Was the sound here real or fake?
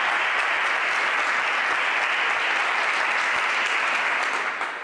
real